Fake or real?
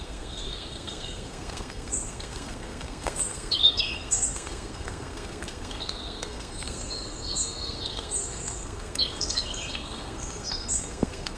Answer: fake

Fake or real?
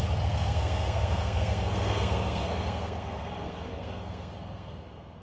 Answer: fake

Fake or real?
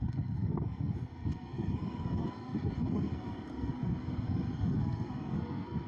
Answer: fake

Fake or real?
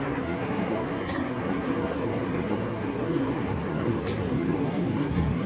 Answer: fake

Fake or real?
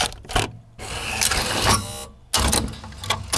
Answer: real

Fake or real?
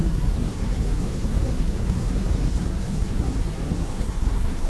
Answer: fake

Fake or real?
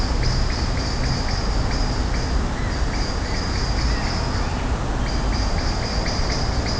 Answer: real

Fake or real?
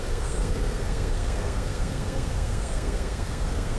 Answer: fake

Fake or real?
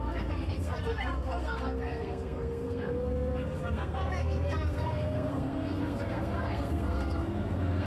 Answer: fake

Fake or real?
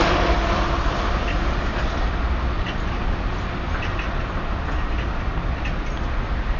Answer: real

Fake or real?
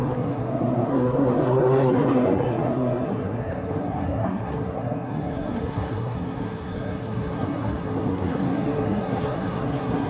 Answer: fake